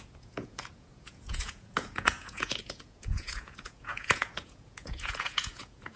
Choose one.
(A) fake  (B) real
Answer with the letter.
A